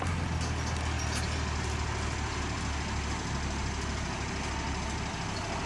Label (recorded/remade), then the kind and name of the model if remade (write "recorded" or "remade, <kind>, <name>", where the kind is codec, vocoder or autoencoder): recorded